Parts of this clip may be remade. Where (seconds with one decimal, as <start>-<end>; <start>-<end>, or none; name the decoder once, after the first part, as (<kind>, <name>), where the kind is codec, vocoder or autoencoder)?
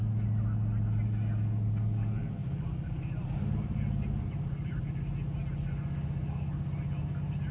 2.4-4.8 (vocoder, BigVGAN v2)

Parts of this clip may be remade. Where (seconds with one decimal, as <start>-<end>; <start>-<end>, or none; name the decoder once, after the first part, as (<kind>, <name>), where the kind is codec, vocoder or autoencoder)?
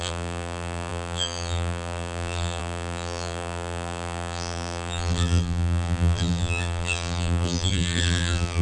0.0-8.6 (vocoder, BigVGAN v2)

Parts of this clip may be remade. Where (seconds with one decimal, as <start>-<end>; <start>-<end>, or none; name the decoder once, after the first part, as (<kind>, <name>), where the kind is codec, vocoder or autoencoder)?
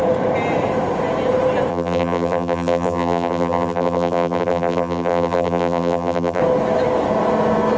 1.7-6.4 (vocoder, BigVGAN v2)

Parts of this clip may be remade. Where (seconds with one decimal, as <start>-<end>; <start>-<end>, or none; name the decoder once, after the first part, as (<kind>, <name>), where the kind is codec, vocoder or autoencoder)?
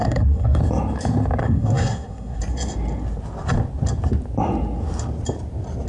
0.0-0.6 (codec, SNAC); 1.4-2.4